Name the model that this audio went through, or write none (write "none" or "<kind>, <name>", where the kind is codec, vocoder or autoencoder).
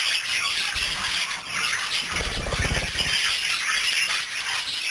none